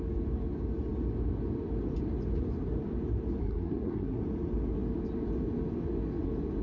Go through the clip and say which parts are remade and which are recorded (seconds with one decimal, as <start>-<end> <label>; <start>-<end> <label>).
0.0-3.4 recorded; 3.4-4.2 remade; 4.2-6.6 recorded